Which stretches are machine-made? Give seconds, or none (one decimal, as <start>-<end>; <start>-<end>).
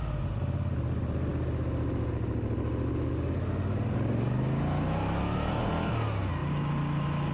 none